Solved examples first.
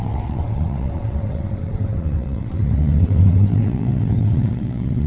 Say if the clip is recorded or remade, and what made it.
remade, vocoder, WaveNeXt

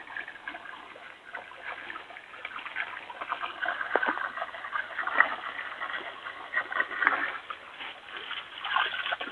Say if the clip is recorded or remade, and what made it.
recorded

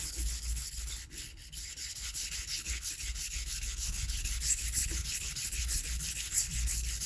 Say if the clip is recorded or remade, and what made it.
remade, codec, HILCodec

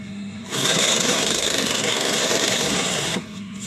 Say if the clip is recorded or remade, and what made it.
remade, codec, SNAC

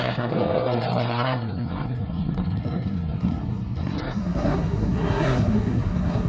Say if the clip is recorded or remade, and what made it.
remade, codec, SNAC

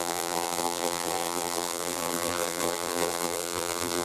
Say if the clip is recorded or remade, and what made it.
remade, vocoder, BigVGAN v2